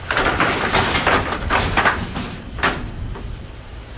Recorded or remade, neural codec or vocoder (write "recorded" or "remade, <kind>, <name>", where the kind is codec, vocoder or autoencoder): remade, vocoder, BigVGAN v2